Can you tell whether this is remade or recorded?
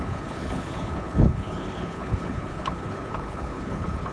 remade